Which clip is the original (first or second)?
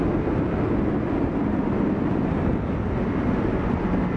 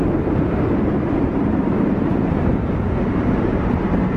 first